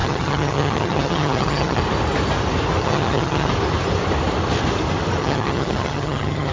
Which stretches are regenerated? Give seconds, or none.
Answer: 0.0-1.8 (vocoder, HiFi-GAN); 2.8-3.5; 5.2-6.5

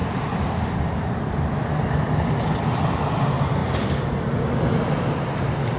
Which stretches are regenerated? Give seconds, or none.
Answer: none

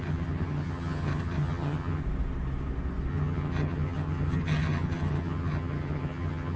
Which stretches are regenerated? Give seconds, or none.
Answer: 0.0-2.0 (vocoder, HiFi-GAN); 3.1-6.6

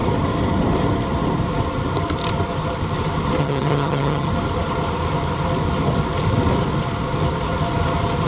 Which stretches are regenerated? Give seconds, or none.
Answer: 3.4-4.3 (vocoder, HiFi-GAN)

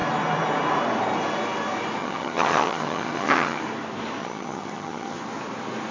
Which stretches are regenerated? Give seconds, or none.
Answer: 2.0-3.6 (vocoder, HiFi-GAN); 4.2-5.2

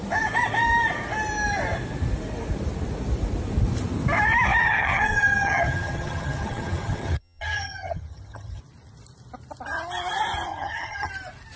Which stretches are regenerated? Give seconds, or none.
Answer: 4.6-8.6 (vocoder, HiFi-GAN); 10.5-11.1

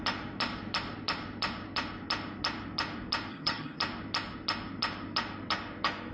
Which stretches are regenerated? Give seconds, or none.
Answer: 3.3-3.8 (vocoder, HiFi-GAN)

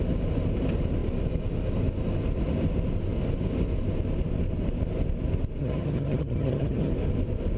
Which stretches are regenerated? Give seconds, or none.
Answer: 5.6-6.9 (vocoder, HiFi-GAN)